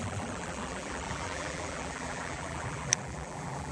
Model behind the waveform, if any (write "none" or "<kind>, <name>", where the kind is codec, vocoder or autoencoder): vocoder, BigVGAN v2